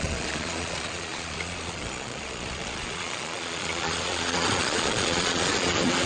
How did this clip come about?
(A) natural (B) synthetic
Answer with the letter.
B